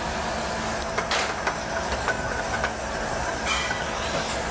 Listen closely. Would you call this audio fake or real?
real